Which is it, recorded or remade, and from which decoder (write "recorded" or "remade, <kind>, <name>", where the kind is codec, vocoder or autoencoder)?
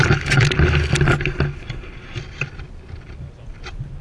recorded